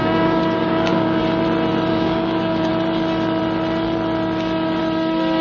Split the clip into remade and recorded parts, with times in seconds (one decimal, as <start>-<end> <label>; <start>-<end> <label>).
0.0-1.2 remade; 1.2-1.9 recorded; 1.9-2.7 remade; 2.7-5.4 recorded